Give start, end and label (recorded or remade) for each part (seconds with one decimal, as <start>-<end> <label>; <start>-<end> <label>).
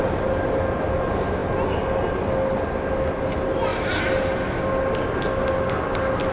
0.0-6.3 recorded